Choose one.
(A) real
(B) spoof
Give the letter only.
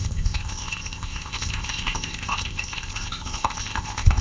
B